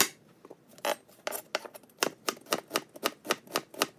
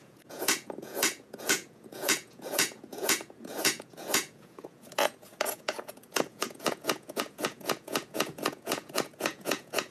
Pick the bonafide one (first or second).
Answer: first